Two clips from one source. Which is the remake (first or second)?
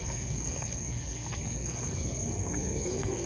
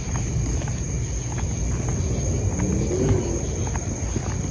first